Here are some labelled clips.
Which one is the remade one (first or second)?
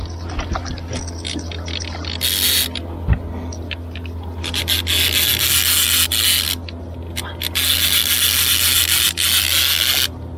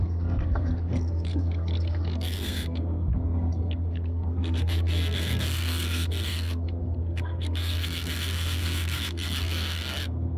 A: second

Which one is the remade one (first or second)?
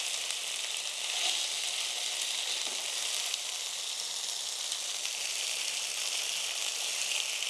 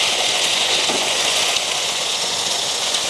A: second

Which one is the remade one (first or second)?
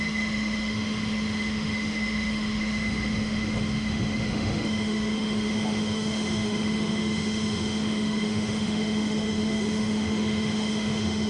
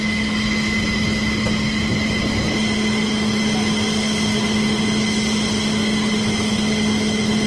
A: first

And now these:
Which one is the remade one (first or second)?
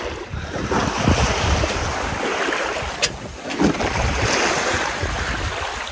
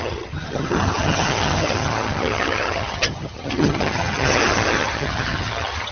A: second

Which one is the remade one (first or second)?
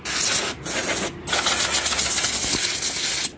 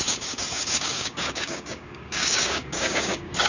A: second